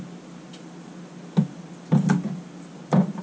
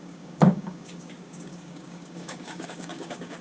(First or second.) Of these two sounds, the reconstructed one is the second